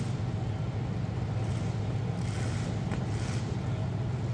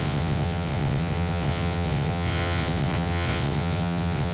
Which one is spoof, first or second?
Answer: second